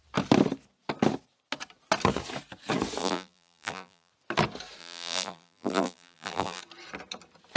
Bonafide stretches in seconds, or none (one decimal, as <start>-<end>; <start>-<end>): 0.0-3.0; 4.1-4.8; 6.6-7.6

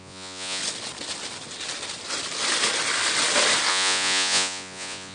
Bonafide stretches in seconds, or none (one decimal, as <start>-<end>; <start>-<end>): 0.6-3.7

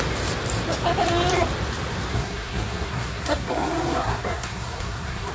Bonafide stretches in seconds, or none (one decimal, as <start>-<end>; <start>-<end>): 0.0-2.1

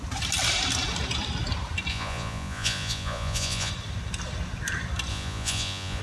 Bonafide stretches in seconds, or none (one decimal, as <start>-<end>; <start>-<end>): 0.0-1.9; 3.7-5.1

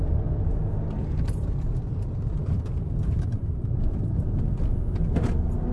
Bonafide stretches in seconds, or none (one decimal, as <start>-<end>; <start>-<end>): 0.0-1.0; 4.4-5.7

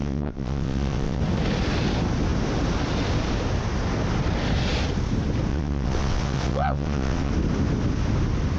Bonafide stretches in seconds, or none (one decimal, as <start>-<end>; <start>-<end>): 1.2-5.5; 7.3-8.6

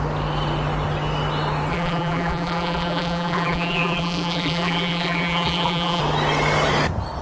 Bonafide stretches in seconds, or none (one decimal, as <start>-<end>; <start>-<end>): 0.0-1.7; 6.0-7.2

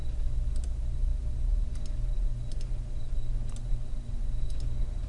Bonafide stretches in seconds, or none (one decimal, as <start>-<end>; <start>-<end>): 0.0-5.1